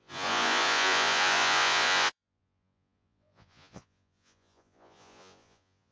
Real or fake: fake